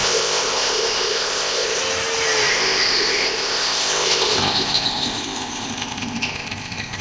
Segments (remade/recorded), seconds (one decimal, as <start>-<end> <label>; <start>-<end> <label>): 0.0-1.8 remade; 1.8-2.5 recorded; 2.5-7.0 remade